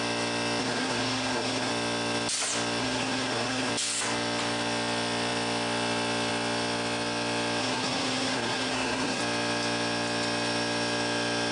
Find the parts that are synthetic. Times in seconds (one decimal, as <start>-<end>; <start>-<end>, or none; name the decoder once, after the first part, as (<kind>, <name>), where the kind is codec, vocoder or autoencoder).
0.6-1.7 (codec, SNAC); 2.8-3.7; 7.6-9.2